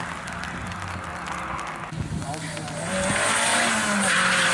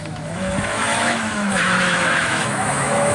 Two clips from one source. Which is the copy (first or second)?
second